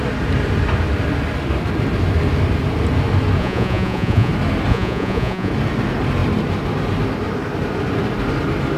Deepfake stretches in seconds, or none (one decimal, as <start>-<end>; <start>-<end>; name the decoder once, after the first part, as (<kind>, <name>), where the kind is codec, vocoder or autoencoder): 3.4-4.3 (vocoder, Vocos); 4.7-5.5